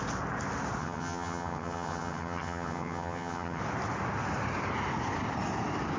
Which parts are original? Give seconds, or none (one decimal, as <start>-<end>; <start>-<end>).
0.0-0.8; 3.6-6.0